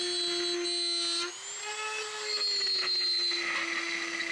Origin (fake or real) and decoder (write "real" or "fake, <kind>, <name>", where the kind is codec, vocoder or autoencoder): real